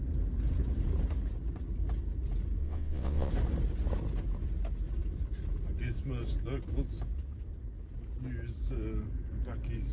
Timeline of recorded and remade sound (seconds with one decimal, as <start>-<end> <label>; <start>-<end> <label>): 0.0-2.6 recorded; 2.6-3.3 remade; 3.3-9.9 recorded